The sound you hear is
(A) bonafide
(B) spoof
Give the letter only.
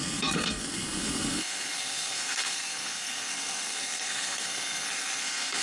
B